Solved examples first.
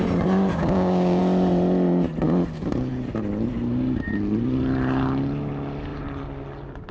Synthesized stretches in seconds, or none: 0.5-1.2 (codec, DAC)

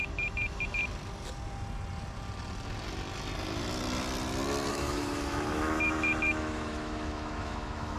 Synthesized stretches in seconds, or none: 0.0-0.8 (autoencoder, DAC-VAE); 4.7-8.0

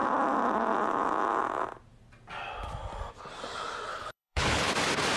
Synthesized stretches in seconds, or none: 3.9-4.7 (codec, HILCodec)